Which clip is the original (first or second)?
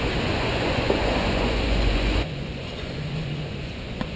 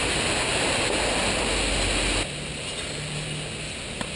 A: second